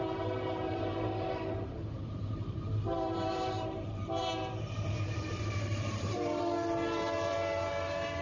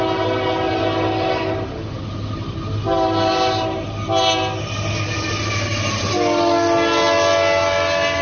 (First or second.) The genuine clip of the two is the second